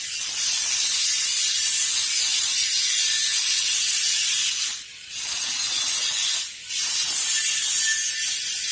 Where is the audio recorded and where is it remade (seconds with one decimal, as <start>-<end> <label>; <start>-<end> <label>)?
0.0-8.7 recorded